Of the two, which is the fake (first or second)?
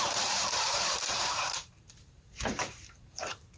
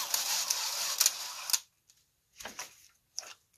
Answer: first